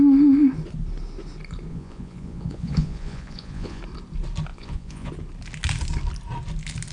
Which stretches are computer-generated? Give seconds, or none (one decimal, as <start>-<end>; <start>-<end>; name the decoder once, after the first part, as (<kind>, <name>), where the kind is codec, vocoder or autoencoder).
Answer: 1.7-3.8 (vocoder, Vocos); 4.5-5.1